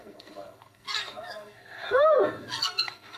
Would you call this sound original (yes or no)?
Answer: no